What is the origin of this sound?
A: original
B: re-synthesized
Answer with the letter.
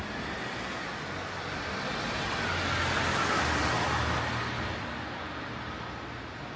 A